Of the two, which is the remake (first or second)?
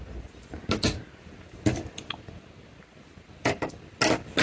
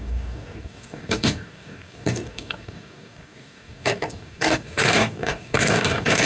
second